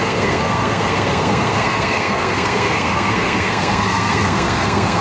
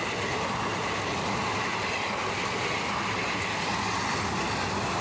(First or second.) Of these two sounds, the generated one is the first